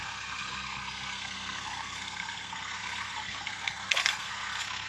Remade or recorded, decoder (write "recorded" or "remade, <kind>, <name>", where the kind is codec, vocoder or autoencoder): remade, codec, SNAC